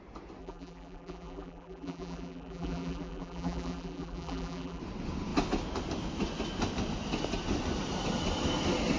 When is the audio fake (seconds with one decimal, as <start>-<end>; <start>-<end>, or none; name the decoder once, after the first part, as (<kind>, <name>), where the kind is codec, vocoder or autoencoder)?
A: 0.4-4.8 (vocoder, BigVGAN v2)